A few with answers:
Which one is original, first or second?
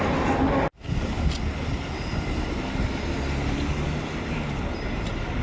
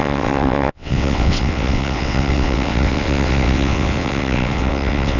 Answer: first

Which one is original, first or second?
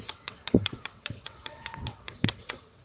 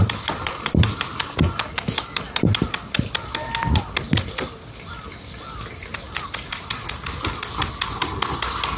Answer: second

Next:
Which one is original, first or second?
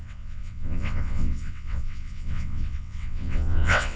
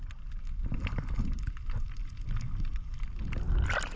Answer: second